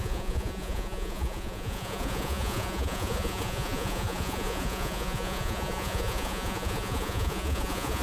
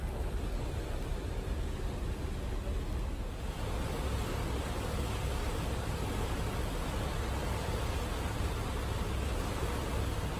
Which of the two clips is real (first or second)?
second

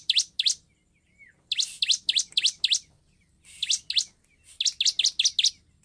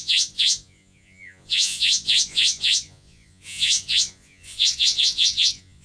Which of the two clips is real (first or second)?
first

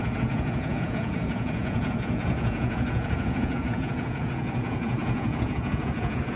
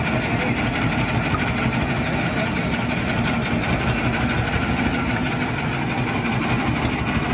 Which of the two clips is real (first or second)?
second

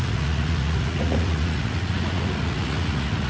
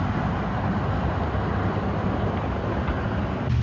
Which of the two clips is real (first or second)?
second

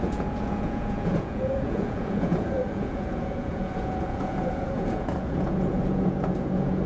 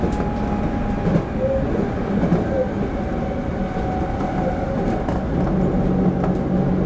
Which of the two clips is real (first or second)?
second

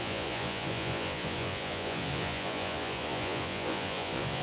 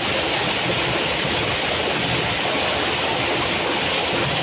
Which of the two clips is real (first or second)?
second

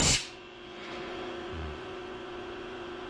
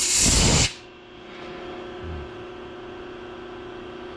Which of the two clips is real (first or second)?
second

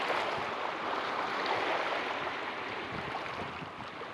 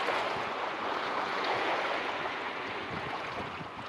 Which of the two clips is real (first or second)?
first